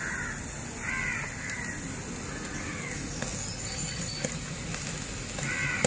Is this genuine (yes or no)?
yes